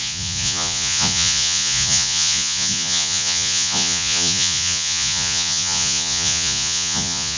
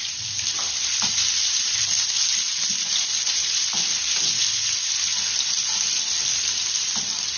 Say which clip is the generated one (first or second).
first